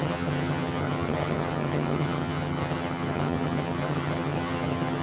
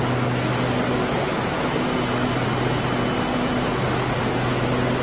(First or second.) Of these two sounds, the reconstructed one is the first